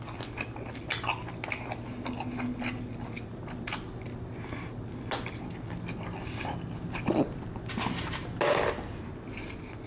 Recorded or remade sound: recorded